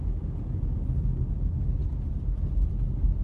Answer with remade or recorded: recorded